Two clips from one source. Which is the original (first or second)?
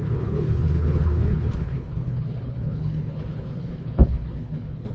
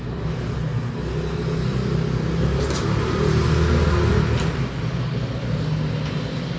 second